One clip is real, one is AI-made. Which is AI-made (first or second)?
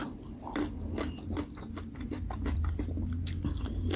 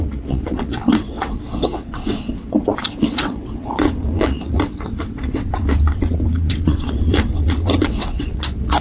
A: second